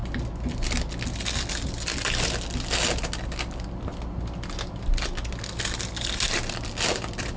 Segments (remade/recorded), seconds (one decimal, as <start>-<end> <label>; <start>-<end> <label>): 0.0-7.4 recorded

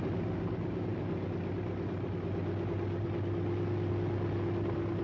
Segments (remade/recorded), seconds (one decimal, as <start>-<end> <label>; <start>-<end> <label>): 0.0-5.0 recorded

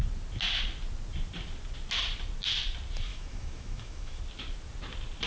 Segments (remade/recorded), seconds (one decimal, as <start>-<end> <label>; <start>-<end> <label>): 0.0-3.1 recorded; 3.1-4.2 remade; 4.2-5.3 recorded

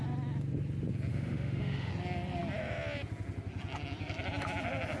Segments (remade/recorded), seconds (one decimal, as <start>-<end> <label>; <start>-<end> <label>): 0.0-1.1 recorded; 1.1-1.9 remade; 1.9-5.0 recorded

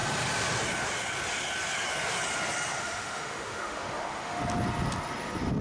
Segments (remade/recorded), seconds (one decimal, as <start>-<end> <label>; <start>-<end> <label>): 0.0-2.8 recorded; 2.8-4.4 remade; 4.4-5.6 recorded

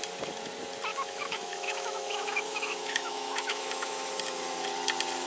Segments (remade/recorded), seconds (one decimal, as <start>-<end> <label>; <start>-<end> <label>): 0.0-0.9 recorded; 0.9-4.1 remade; 4.1-5.3 recorded